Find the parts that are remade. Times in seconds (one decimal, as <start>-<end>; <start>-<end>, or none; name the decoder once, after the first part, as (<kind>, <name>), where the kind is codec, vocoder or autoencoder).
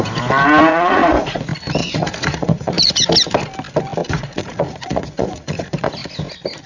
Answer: 0.7-1.4 (vocoder, Vocos); 1.8-3.0; 4.0-5.9